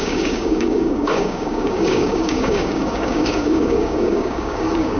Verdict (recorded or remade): remade